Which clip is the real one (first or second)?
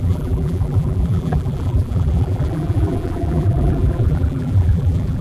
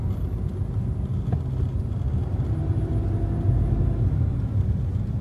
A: second